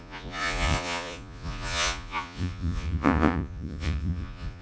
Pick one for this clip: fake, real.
fake